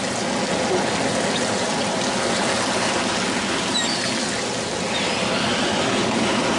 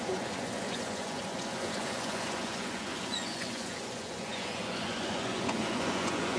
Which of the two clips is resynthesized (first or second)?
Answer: second